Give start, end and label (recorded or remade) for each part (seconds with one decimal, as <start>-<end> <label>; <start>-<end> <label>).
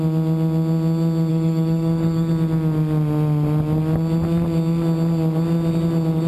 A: 0.0-1.3 recorded; 1.3-2.3 remade; 2.3-6.3 recorded